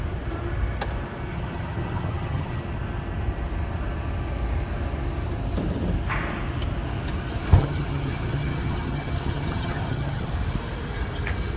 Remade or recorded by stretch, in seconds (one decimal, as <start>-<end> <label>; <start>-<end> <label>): 0.0-1.3 recorded; 1.3-2.6 remade; 2.6-7.6 recorded; 7.6-10.3 remade; 10.3-11.6 recorded